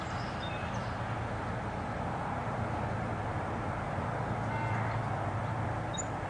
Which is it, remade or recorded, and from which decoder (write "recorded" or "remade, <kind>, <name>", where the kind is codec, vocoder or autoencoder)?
recorded